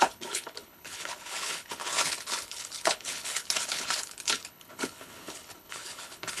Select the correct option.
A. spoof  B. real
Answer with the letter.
A